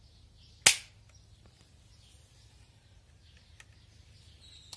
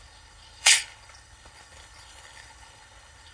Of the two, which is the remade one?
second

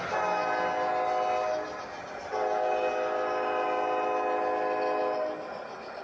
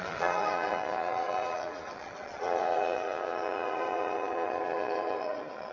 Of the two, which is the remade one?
second